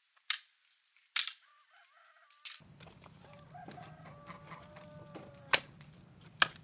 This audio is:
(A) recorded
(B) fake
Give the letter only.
A